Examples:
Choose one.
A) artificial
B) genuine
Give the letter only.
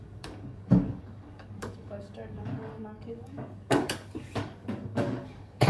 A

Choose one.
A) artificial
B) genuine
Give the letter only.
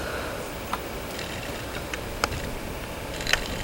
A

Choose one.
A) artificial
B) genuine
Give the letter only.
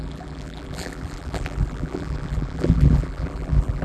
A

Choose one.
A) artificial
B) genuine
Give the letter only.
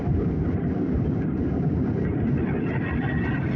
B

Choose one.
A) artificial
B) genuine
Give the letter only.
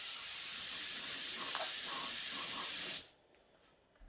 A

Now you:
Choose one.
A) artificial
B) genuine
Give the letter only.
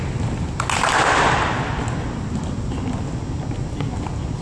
B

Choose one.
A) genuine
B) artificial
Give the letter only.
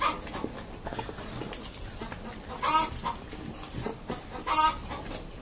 A